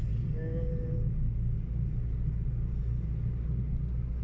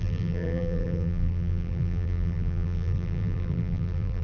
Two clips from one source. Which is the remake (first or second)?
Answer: second